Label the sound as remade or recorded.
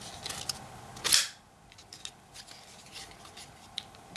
recorded